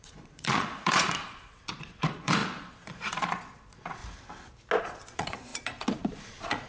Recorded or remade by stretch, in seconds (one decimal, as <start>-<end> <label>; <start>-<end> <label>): 0.0-4.0 remade; 4.0-4.8 recorded; 4.8-6.7 remade